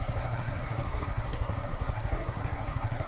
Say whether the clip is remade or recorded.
remade